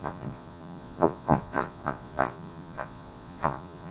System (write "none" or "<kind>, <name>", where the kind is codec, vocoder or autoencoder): vocoder, Vocos